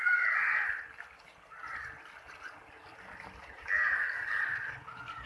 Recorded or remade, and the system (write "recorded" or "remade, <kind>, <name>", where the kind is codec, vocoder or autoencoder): recorded